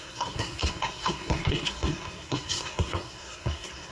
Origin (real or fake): fake